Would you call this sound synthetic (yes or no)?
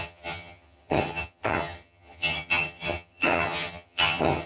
yes